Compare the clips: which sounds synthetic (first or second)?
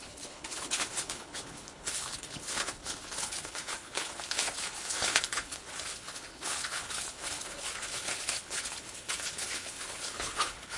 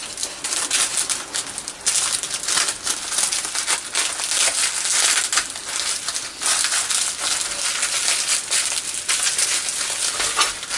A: first